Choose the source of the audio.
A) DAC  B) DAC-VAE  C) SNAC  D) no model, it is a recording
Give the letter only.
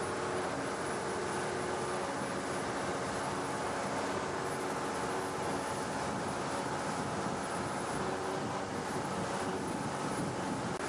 D